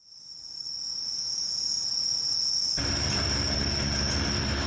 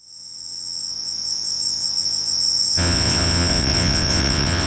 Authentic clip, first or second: first